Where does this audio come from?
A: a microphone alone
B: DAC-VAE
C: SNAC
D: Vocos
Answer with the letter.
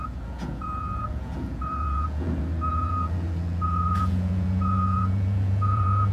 D